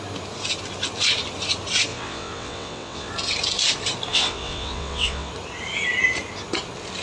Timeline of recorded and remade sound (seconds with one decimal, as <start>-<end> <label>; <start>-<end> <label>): 0.0-1.9 recorded; 1.9-3.1 remade; 3.1-4.1 recorded; 4.1-5.3 remade; 5.3-7.0 recorded